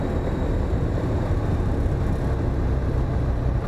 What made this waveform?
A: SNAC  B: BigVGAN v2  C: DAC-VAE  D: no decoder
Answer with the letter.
D